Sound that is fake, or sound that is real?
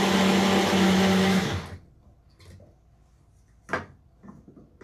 real